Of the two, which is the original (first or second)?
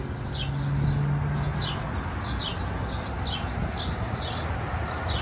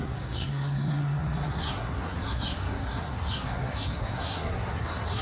first